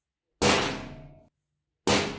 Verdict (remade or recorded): recorded